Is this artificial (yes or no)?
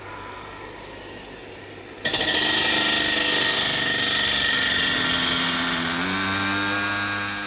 no